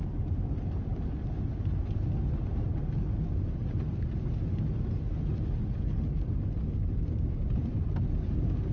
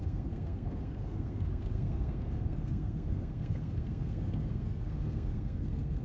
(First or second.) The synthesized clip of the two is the second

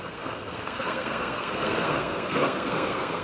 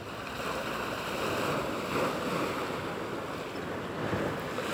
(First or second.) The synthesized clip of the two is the first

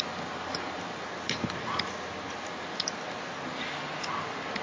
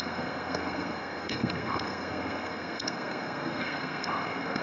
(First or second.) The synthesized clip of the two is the second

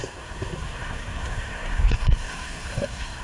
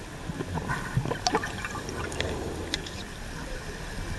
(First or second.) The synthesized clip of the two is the first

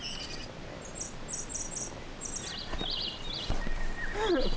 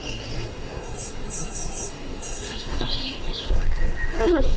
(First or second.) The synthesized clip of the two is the second